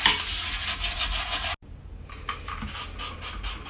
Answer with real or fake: real